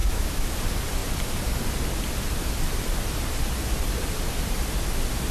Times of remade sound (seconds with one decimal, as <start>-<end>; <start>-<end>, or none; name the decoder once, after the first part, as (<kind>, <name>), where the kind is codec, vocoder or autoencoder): 0.0-0.5 (autoencoder, DAC-VAE)